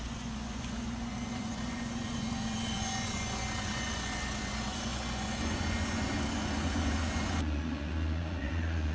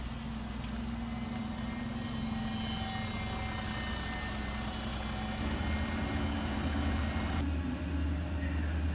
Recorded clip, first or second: second